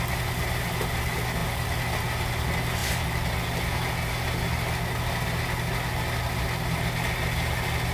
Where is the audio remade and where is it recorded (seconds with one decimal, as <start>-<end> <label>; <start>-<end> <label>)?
0.0-7.9 recorded